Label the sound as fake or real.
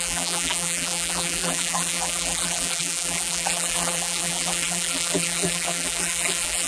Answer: fake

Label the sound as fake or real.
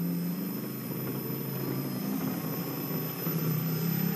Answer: fake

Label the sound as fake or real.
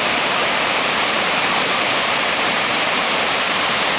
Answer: fake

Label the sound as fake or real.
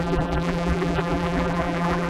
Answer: fake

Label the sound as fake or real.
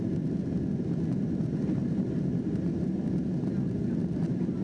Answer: real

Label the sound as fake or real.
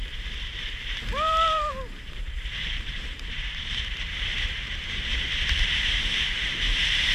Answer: fake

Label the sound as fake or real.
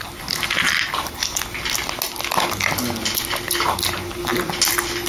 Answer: real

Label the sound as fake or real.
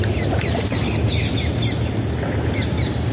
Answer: real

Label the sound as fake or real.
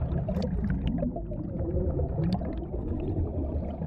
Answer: real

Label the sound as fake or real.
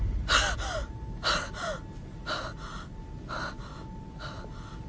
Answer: real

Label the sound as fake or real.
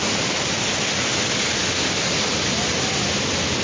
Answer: real